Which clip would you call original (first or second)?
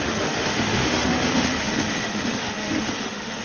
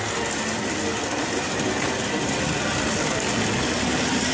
second